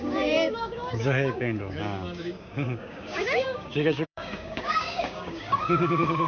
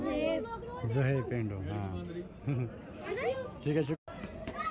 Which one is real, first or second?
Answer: second